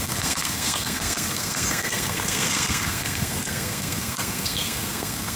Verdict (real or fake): fake